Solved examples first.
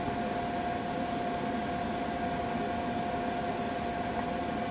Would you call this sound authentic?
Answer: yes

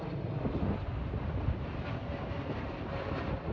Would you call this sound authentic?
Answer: no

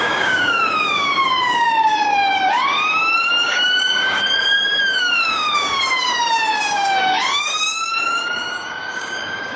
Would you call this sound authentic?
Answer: no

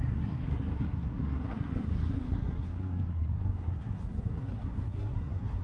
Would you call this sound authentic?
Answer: no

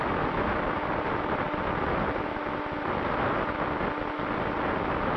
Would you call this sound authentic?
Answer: yes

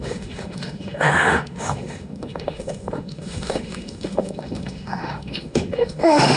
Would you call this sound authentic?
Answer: no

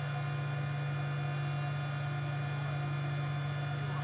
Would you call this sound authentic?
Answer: yes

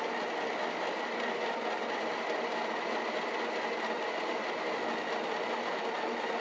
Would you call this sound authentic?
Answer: yes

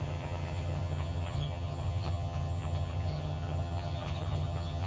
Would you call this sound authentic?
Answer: no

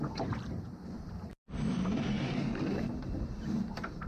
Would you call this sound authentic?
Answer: yes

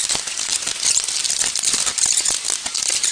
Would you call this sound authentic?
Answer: yes